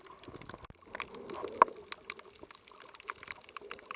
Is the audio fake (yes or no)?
no